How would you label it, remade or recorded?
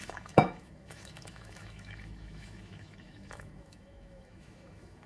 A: remade